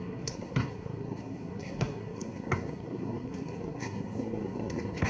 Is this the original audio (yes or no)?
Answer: no